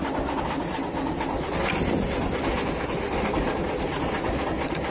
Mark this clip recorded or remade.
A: recorded